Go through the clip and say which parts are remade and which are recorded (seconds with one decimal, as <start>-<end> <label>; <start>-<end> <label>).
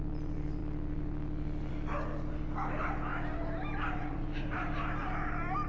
0.0-4.0 recorded; 4.0-5.1 remade; 5.1-5.7 recorded